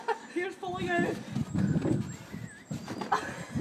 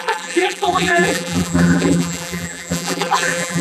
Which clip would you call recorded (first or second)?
first